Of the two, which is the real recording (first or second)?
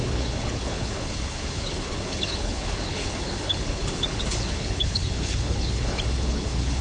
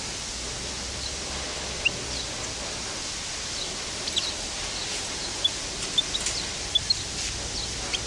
second